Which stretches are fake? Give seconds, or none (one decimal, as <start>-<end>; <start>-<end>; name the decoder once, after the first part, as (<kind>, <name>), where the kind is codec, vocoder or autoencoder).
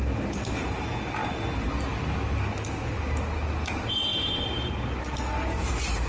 4.1-4.7 (vocoder, BigVGAN v2)